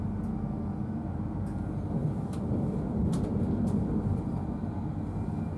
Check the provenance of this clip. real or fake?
real